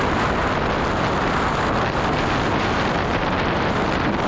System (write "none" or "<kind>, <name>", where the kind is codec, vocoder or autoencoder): none